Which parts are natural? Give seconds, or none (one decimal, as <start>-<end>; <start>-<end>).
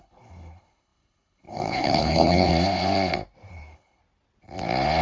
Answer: 2.5-3.5; 4.0-5.0